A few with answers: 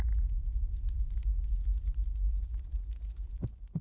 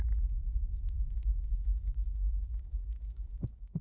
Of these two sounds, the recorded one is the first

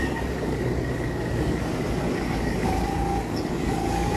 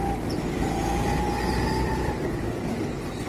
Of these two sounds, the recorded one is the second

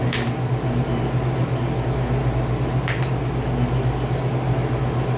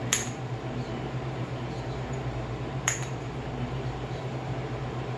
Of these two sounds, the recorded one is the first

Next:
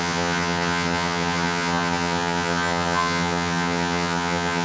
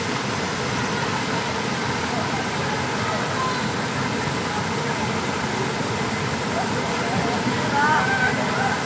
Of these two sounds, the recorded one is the second